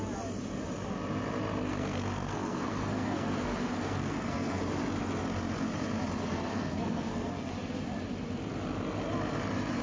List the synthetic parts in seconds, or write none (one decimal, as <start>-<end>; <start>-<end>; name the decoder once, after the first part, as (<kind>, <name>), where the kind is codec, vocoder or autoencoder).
1.7-4.6 (codec, SNAC); 6.5-7.5